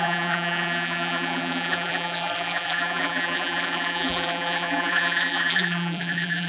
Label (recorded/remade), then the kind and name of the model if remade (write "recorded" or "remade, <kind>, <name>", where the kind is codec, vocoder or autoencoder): remade, vocoder, BigVGAN v2